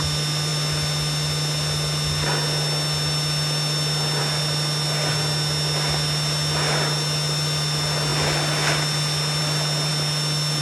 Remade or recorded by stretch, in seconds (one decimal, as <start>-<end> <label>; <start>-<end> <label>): 0.0-10.6 recorded